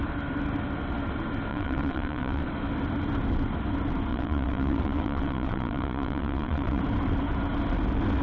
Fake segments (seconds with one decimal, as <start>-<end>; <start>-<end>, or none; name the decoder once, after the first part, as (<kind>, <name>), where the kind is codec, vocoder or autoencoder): 1.5-2.4 (vocoder, WaveNeXt); 4.1-6.8